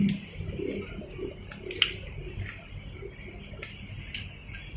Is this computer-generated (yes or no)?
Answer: no